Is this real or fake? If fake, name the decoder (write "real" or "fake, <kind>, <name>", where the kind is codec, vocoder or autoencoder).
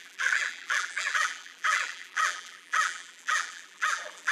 fake, vocoder, BigVGAN v2